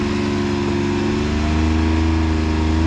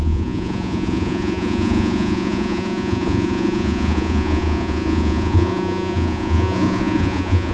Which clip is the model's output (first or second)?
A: second